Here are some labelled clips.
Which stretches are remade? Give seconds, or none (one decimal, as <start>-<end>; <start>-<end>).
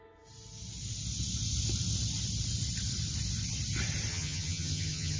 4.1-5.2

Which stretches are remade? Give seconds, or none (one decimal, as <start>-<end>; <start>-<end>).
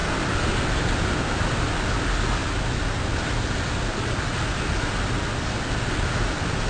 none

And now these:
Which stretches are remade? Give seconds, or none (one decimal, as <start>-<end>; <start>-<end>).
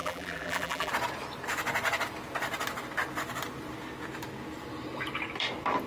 0.0-0.9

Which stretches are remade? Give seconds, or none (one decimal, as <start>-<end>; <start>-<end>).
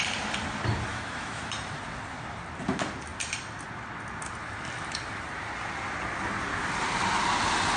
0.9-1.5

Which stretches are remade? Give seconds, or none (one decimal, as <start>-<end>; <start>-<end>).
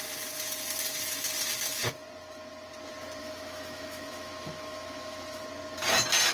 3.2-5.4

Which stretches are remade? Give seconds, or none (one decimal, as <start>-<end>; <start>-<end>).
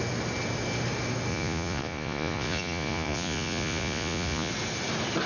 1.3-4.5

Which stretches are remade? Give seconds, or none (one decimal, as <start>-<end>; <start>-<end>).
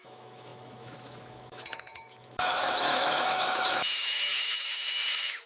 0.0-5.5